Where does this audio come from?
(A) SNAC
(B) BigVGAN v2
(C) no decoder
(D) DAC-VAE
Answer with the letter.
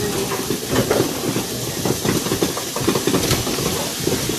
C